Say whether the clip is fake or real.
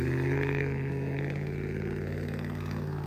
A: fake